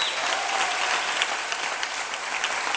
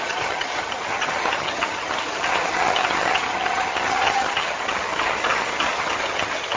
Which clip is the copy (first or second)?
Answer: second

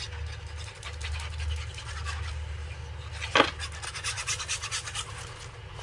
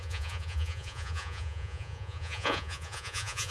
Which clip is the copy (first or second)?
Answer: second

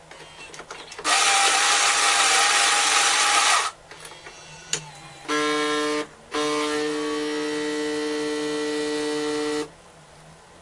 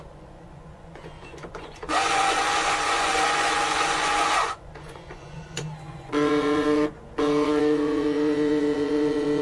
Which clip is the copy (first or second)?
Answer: second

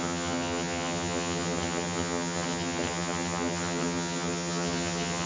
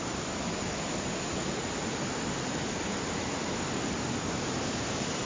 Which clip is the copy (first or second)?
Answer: first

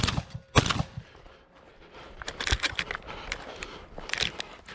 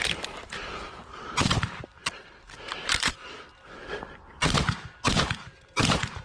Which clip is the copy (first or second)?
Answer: second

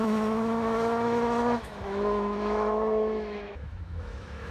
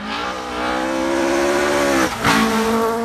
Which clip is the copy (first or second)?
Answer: first